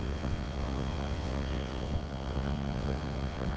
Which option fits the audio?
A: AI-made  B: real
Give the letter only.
A